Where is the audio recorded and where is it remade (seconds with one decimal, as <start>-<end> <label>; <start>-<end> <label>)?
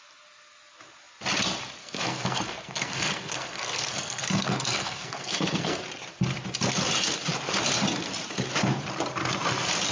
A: 0.0-1.8 recorded; 1.8-5.8 remade; 5.8-9.9 recorded